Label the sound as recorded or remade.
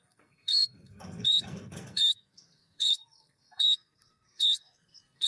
remade